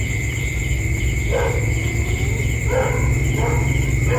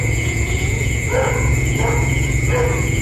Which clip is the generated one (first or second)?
second